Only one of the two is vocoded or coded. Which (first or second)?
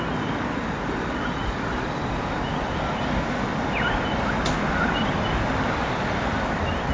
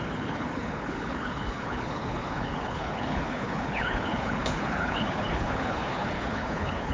second